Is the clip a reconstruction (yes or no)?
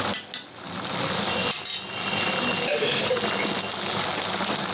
no